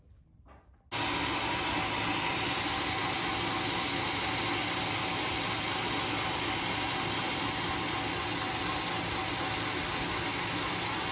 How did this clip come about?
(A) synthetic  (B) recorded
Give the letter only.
B